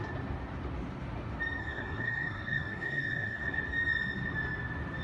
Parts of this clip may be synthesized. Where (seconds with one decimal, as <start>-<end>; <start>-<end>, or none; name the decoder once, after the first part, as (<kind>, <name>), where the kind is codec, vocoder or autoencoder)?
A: 1.6-3.6 (codec, SNAC)